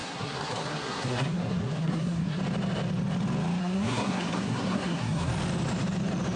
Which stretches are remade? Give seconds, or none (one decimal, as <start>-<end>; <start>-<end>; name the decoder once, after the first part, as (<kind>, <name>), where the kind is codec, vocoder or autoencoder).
0.0-2.4 (codec, SNAC); 3.6-5.3